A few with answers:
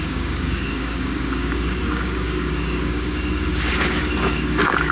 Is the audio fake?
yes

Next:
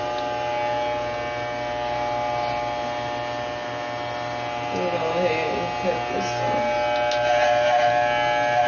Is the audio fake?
no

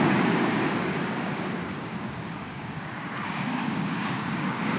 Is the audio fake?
yes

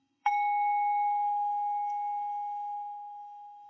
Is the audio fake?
yes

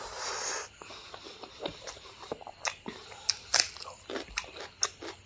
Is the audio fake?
no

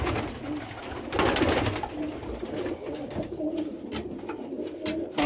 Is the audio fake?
no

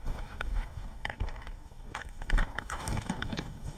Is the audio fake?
yes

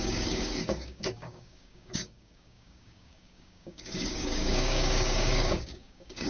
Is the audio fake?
yes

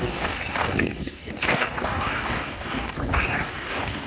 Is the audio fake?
yes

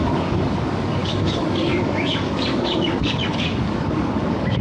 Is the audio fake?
yes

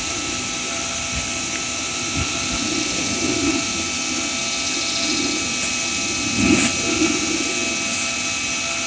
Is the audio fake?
no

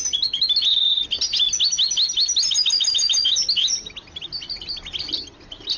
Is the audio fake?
no